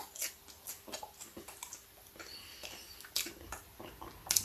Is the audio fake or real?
real